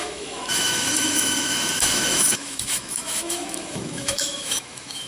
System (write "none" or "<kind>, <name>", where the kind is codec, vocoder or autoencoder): autoencoder, DAC-VAE